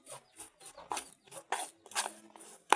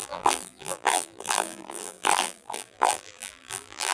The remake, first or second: second